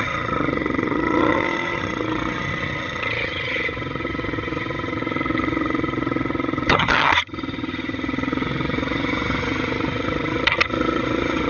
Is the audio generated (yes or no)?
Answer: yes